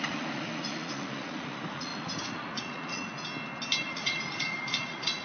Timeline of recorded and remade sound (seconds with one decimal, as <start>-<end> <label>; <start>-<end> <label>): 0.0-3.1 remade; 3.1-3.8 recorded; 3.8-5.2 remade